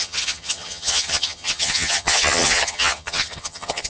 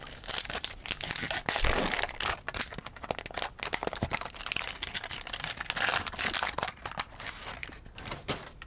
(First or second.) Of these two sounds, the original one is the second